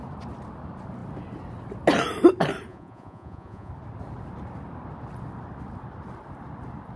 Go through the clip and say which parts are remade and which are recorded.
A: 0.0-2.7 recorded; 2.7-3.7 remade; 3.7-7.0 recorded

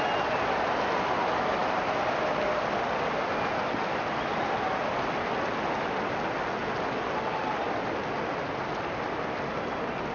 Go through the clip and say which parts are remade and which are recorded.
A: 0.0-10.1 recorded

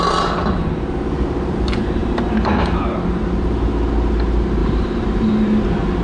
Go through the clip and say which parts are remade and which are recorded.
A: 0.0-4.6 recorded; 4.6-5.3 remade; 5.3-6.0 recorded

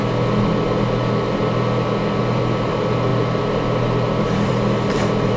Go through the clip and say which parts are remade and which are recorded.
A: 0.0-2.2 recorded; 2.2-3.1 remade; 3.1-4.2 recorded; 4.2-5.4 remade

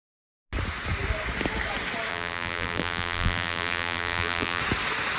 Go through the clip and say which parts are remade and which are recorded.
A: 0.0-2.1 recorded; 2.1-4.6 remade; 4.6-5.2 recorded